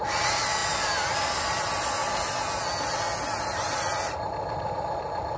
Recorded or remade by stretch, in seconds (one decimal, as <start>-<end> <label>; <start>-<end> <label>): 0.0-5.4 recorded